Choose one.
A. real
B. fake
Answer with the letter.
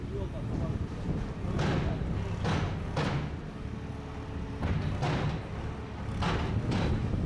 A